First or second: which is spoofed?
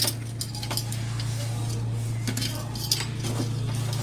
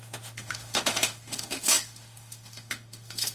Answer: second